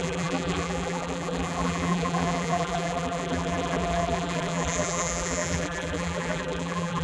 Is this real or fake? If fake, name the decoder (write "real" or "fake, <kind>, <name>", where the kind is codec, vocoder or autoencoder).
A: fake, vocoder, BigVGAN v2